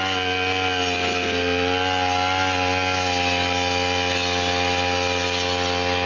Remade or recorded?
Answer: recorded